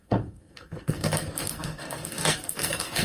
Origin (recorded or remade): remade